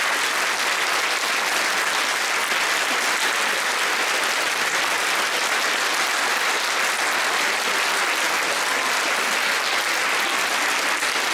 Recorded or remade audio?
recorded